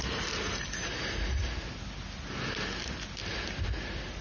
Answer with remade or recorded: recorded